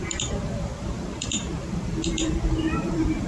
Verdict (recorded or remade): remade